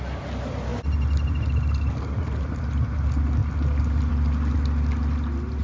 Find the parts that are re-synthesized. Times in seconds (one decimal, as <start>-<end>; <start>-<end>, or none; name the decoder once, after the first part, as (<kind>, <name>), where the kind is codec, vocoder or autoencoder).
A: none